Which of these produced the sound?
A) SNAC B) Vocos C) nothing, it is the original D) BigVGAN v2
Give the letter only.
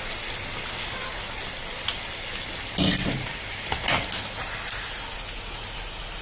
C